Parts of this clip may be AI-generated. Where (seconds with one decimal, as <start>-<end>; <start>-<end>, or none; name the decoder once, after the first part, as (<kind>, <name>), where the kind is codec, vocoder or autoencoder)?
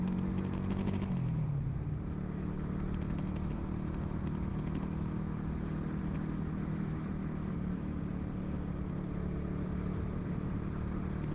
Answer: 6.7-8.0 (autoencoder, DAC-VAE)